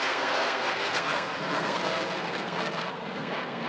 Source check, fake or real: fake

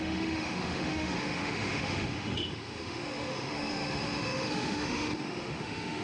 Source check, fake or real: fake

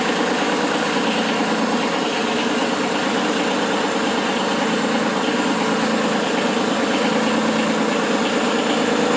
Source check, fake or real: real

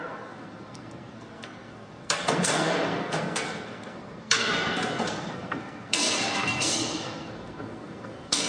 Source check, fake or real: fake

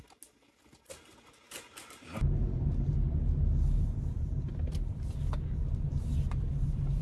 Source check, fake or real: real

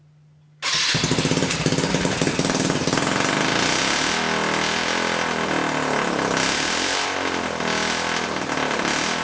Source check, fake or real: real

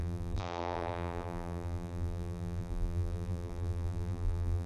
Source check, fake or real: fake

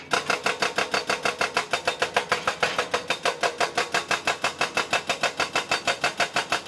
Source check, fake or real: real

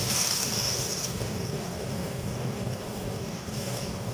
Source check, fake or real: fake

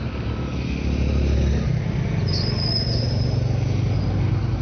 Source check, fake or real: real